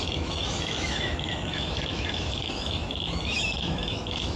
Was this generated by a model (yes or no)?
yes